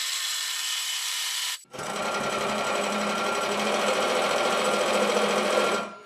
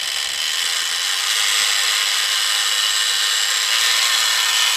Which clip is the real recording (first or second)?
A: second